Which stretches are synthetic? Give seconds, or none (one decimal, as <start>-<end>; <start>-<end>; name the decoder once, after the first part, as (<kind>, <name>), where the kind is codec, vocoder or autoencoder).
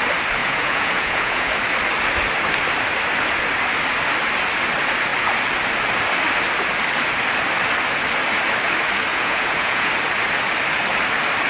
0.4-1.5 (vocoder, Vocos); 9.1-9.9